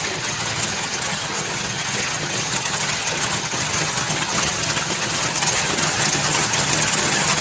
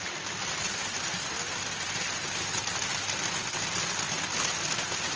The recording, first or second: second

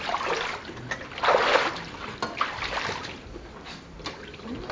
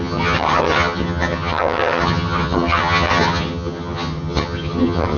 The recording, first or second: first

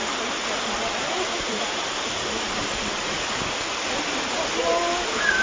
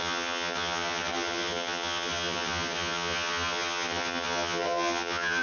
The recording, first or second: first